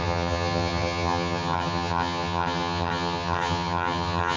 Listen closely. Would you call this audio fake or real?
fake